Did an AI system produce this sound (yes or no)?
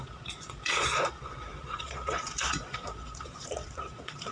yes